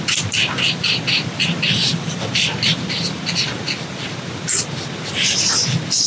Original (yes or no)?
yes